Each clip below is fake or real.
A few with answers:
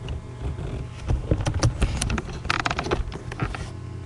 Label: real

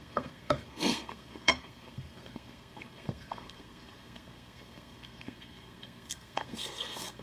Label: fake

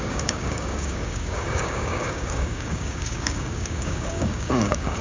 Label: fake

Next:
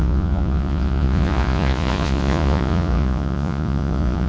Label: fake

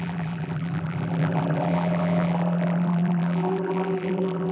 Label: fake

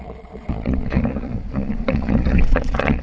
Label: fake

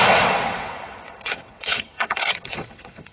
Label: fake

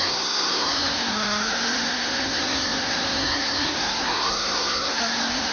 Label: fake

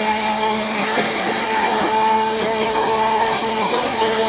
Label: fake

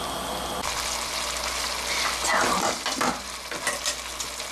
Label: real